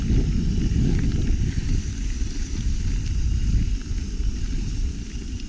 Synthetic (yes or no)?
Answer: no